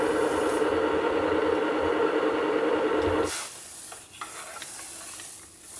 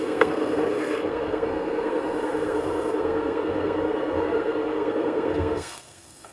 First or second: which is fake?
second